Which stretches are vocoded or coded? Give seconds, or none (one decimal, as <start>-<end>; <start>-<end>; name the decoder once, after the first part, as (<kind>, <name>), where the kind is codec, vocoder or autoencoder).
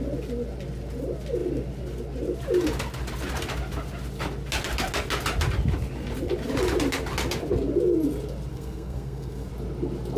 8.5-9.5 (codec, SNAC)